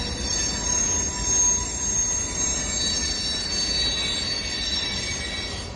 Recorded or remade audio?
recorded